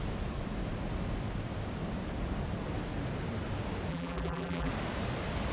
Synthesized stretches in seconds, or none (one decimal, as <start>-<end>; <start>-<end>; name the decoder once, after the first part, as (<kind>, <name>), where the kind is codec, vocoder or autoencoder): 3.9-4.7 (vocoder, BigVGAN v2)